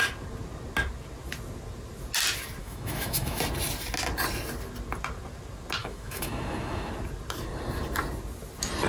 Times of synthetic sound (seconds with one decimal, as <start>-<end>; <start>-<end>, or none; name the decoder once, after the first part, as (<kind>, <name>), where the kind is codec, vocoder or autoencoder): 2.6-3.4 (autoencoder, DAC-VAE); 5.8-6.9